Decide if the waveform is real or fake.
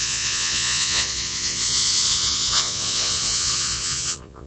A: fake